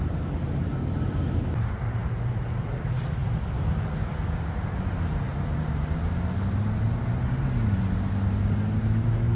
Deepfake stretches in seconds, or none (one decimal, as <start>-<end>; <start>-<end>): none

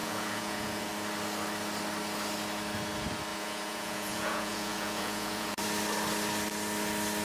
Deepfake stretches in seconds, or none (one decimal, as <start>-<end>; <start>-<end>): 0.0-0.9; 3.3-5.6

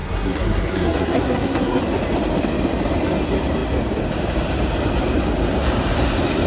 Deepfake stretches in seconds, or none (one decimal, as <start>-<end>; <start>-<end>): 0.0-1.8

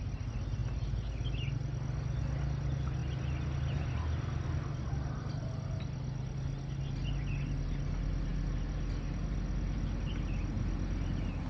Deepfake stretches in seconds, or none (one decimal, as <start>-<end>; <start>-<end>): none

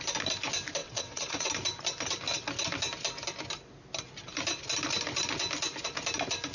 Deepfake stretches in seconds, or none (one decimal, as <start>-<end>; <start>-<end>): 0.8-1.5

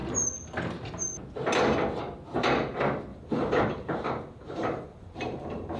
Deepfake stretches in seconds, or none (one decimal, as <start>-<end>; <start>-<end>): 3.1-5.8

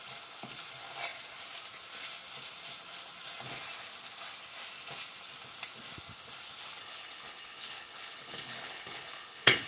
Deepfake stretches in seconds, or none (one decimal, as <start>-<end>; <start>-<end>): 6.8-9.7